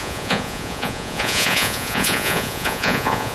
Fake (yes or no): yes